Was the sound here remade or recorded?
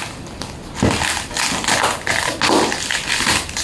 recorded